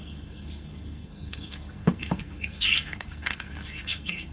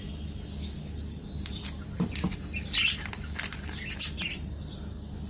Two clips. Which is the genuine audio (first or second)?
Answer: second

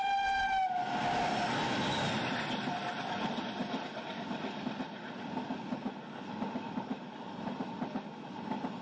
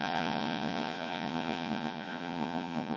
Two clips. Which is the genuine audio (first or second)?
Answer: first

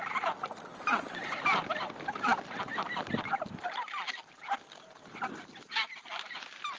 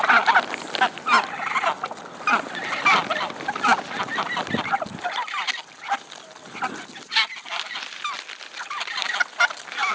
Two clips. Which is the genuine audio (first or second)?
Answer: second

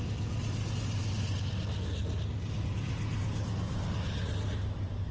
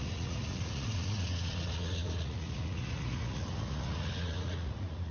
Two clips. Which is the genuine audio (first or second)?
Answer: first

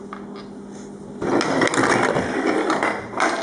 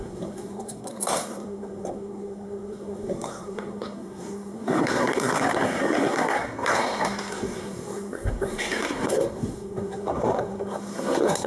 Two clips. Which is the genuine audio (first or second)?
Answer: first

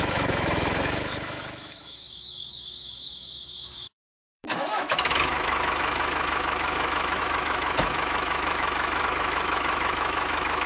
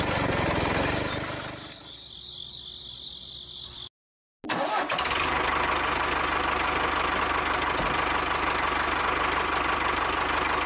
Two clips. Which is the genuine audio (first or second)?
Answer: second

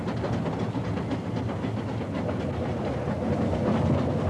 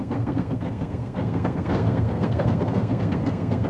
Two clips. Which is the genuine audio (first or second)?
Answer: first